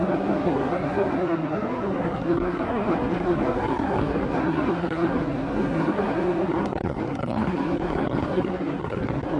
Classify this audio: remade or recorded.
remade